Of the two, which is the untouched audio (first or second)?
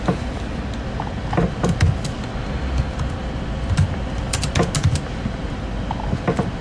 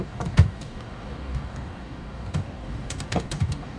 first